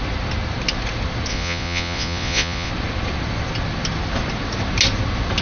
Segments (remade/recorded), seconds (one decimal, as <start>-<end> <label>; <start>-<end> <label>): 0.0-1.3 recorded; 1.3-2.7 remade; 2.7-5.4 recorded

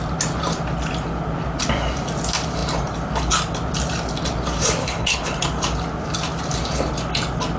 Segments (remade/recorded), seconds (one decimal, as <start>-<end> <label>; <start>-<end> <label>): 0.0-4.8 recorded; 4.8-5.4 remade; 5.4-7.6 recorded

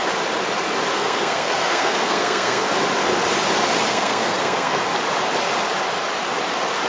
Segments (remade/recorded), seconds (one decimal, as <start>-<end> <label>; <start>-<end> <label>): 0.0-0.9 recorded; 0.9-2.7 remade; 2.7-3.9 recorded; 3.9-4.8 remade; 4.8-6.9 recorded

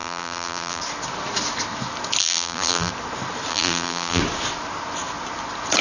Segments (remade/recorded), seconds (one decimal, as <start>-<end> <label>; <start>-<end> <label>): 0.0-0.8 remade; 0.8-2.2 recorded; 2.2-2.9 remade; 2.9-3.5 recorded; 3.5-4.2 remade; 4.2-5.8 recorded

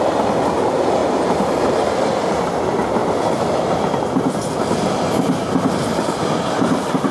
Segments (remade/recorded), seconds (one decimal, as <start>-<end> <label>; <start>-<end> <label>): 0.0-7.1 recorded

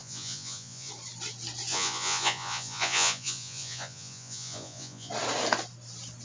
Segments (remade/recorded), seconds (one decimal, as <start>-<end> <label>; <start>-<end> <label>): 0.0-0.9 remade; 0.9-1.7 recorded; 1.7-5.1 remade; 5.1-6.2 recorded